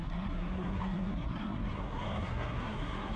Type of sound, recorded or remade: remade